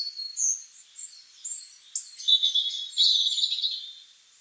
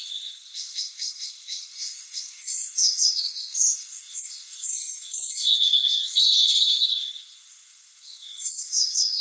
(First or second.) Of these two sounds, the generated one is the second